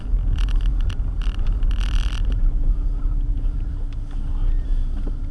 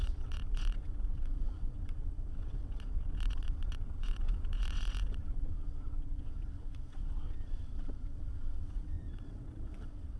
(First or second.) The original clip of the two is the first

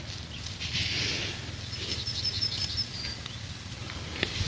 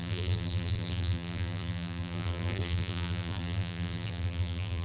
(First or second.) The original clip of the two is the first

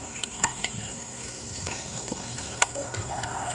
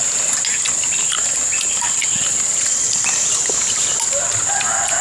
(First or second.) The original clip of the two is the second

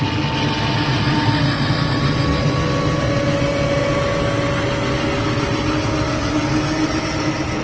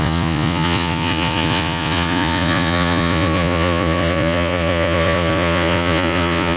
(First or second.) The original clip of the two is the first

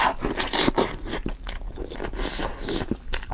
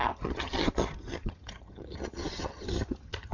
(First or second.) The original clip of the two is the first